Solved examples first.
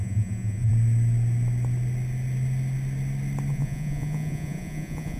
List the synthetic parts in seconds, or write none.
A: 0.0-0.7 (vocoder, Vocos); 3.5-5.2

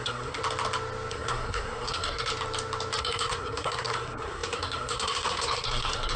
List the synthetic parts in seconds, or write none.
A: 0.0-0.4 (codec, SNAC); 1.1-2.3; 3.0-6.2

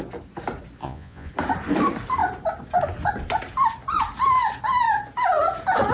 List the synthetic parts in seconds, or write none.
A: 0.8-1.3 (vocoder, Vocos)

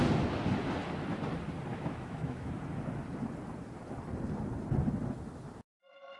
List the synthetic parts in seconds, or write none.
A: 1.7-2.5 (autoencoder, DAC-VAE)